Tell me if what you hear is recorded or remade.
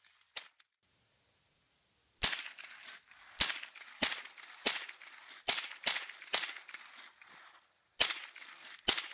recorded